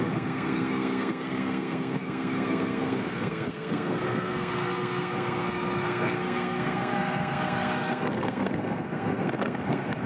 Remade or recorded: remade